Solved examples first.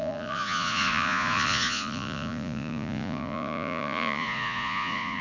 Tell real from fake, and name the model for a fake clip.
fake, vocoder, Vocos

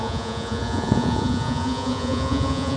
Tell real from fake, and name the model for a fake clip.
fake, vocoder, Vocos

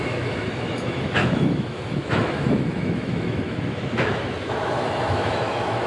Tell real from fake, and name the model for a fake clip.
fake, autoencoder, DAC-VAE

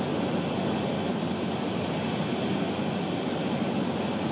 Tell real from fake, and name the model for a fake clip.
real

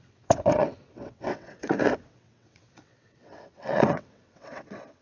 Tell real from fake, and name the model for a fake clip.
fake, vocoder, WaveNeXt